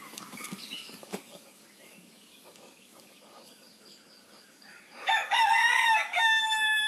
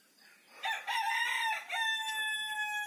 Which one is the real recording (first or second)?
second